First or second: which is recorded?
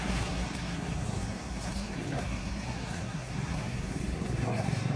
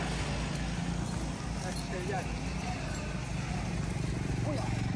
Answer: second